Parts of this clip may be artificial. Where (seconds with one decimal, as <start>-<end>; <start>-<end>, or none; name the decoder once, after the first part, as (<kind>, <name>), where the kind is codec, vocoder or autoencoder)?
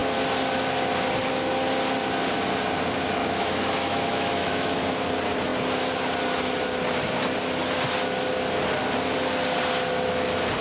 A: 3.2-4.8 (autoencoder, DAC-VAE)